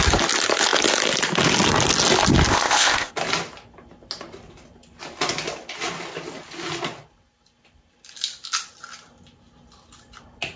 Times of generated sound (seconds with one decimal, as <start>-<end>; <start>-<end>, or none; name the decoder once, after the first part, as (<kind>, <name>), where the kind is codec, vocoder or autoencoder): 2.5-3.1 (codec, ZipCodec)